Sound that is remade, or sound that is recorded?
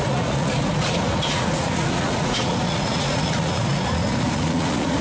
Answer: remade